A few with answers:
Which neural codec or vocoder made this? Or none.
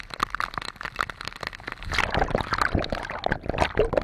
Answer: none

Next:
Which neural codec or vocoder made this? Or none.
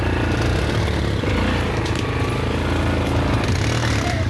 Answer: none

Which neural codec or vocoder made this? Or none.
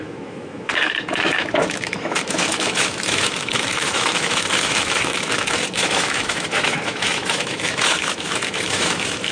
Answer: autoencoder, DAC-VAE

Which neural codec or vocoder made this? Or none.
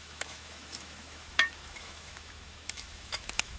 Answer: autoencoder, DAC-VAE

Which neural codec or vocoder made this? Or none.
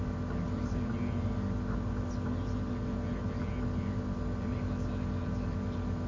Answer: none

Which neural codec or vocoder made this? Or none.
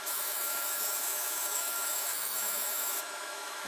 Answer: autoencoder, DAC-VAE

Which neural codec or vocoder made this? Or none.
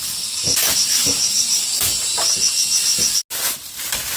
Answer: none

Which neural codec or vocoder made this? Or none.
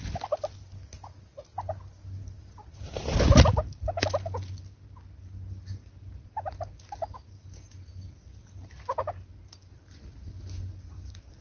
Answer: none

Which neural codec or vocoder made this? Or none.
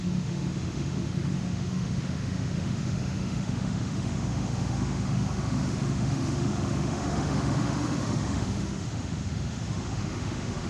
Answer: autoencoder, DAC-VAE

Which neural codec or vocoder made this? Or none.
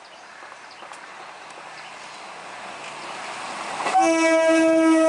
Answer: none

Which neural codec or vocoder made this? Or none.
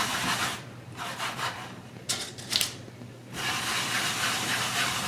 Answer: none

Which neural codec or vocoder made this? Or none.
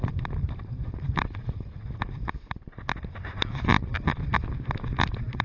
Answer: none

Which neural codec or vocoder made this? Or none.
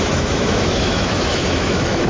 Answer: autoencoder, DAC-VAE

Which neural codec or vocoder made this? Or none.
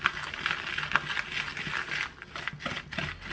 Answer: none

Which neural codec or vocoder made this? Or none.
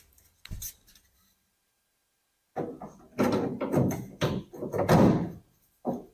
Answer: none